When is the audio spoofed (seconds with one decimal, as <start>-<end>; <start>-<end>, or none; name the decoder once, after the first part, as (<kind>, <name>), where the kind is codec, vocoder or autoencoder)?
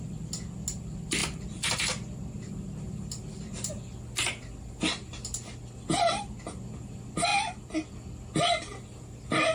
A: none